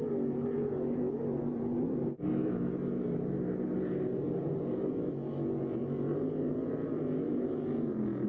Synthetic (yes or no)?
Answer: no